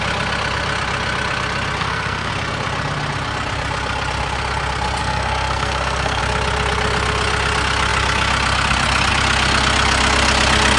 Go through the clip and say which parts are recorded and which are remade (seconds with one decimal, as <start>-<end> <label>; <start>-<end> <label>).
0.0-1.8 recorded; 1.8-2.3 remade; 2.3-5.0 recorded; 5.0-6.2 remade; 6.2-10.8 recorded

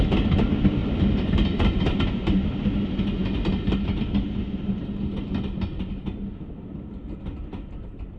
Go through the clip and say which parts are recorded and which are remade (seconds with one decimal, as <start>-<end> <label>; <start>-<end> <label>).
0.0-0.8 recorded; 0.8-2.5 remade; 2.5-8.2 recorded

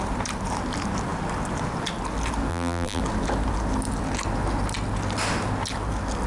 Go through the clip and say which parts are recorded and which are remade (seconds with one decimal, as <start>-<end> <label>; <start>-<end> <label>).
0.0-2.5 recorded; 2.5-3.0 remade; 3.0-6.3 recorded

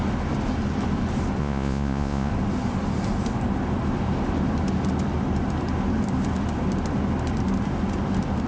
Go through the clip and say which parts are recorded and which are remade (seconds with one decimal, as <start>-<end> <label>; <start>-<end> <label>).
0.0-1.4 recorded; 1.4-2.3 remade; 2.3-8.5 recorded

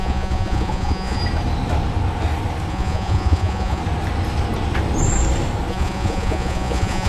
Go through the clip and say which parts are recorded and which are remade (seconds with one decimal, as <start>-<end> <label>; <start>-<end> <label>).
0.0-1.2 remade; 1.2-2.7 recorded; 2.7-3.8 remade; 3.8-5.7 recorded; 5.7-7.1 remade

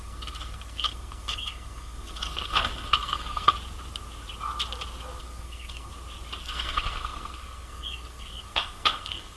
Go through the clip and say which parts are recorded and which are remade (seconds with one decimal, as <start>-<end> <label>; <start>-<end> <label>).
0.0-3.5 remade; 3.5-5.2 recorded; 5.2-5.9 remade; 5.9-6.4 recorded; 6.4-9.4 remade

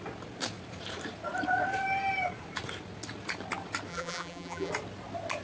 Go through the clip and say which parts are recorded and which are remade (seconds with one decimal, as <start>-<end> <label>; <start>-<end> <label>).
0.0-3.9 recorded; 3.9-4.7 remade; 4.7-5.4 recorded